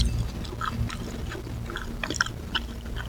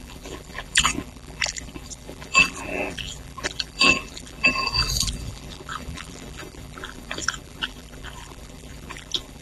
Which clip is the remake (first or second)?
second